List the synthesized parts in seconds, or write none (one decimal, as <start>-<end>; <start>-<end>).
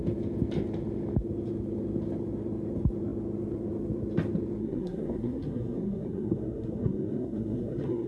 4.6-8.1